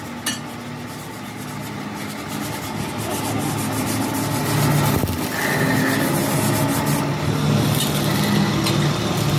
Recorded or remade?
recorded